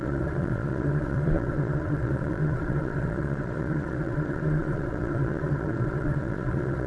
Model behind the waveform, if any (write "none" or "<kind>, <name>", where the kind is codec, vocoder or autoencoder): vocoder, Vocos